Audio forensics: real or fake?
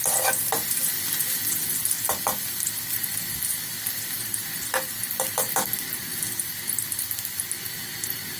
real